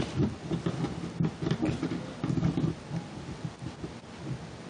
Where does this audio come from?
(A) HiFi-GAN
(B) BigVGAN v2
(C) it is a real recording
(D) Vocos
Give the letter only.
C